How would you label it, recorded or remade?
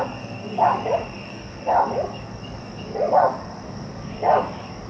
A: remade